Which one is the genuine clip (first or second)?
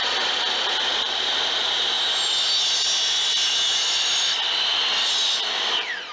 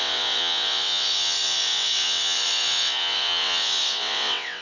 first